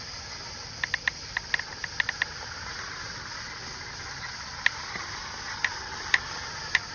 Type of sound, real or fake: real